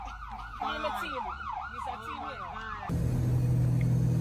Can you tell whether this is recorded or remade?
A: recorded